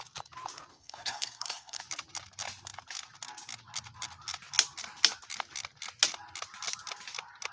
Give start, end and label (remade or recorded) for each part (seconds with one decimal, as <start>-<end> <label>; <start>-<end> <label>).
0.0-0.7 recorded; 0.7-1.8 remade; 1.8-7.5 recorded